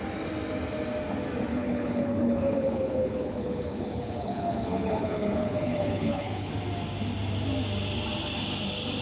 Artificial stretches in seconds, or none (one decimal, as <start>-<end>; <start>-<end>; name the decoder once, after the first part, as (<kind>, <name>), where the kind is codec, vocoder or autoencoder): 1.5-6.5 (codec, HILCodec)